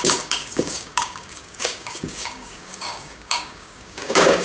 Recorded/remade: remade